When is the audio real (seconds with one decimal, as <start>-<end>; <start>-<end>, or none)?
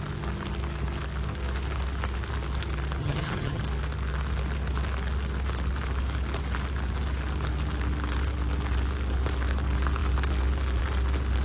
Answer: 0.0-3.0; 3.6-11.4